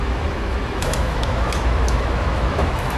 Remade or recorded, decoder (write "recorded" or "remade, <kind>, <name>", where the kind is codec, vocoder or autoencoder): remade, autoencoder, DAC-VAE